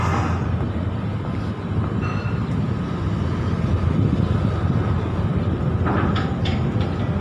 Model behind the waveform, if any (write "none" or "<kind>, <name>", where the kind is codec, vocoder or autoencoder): none